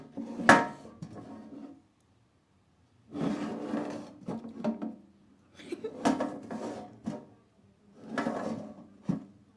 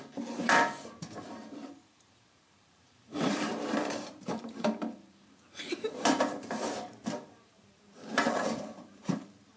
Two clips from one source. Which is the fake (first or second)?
second